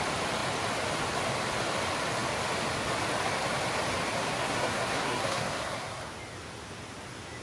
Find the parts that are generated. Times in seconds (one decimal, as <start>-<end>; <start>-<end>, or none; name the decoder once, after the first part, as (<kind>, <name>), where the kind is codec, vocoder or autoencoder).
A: 4.2-6.0 (codec, SNAC)